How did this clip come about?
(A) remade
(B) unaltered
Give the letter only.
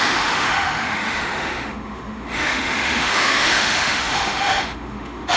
A